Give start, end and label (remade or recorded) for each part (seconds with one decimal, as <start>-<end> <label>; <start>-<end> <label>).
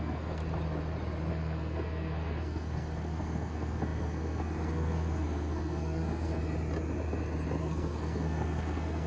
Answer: 0.0-0.4 remade; 0.4-1.3 recorded; 1.3-6.4 remade; 6.4-7.6 recorded; 7.6-9.1 remade